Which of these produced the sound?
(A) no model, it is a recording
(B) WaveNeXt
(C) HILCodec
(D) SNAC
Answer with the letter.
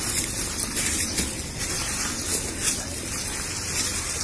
A